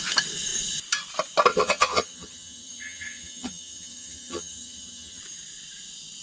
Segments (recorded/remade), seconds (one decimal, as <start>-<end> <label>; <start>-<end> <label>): 0.0-1.5 recorded; 1.5-5.2 remade; 5.2-6.2 recorded